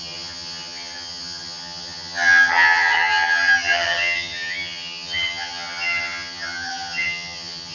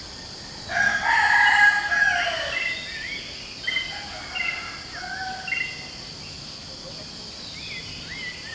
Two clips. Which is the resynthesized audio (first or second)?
first